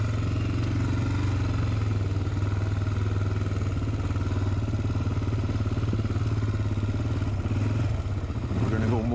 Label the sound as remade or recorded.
recorded